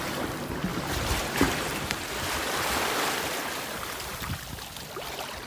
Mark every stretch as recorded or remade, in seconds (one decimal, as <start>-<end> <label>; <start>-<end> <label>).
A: 0.0-0.7 recorded; 0.7-2.1 remade; 2.1-5.5 recorded